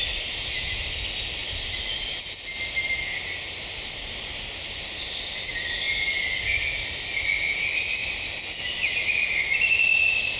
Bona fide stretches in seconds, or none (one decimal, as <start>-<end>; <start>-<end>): 0.0-10.4